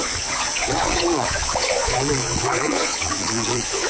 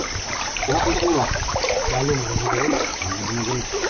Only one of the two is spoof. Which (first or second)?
first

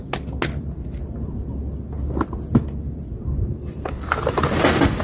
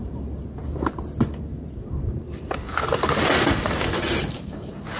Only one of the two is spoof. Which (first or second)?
second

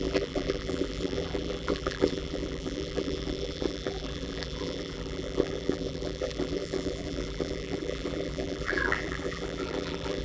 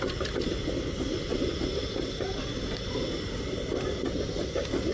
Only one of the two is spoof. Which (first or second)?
first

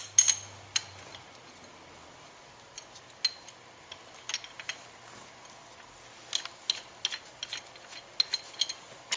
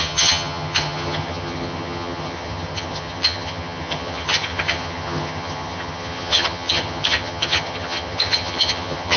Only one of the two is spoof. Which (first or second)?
second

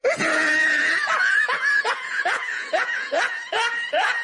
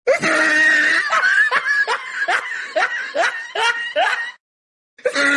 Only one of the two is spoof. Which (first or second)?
first